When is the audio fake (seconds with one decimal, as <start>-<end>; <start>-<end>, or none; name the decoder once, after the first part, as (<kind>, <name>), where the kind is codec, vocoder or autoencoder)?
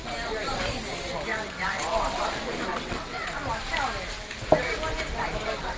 1.3-2.3 (vocoder, WaveNeXt); 2.7-3.4